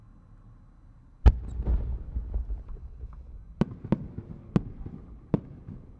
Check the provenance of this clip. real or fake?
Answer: real